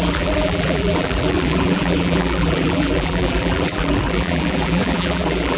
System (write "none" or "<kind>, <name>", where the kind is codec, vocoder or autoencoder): vocoder, BigVGAN v2